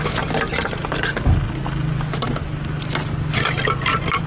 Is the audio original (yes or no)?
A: yes